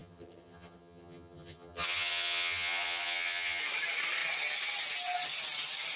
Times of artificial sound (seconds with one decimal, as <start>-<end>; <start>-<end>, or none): 0.0-3.6

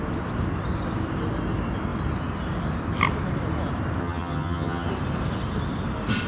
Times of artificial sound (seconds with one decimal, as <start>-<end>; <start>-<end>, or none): 4.0-4.9

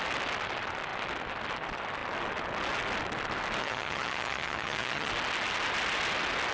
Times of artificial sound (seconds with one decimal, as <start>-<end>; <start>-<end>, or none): 3.6-5.1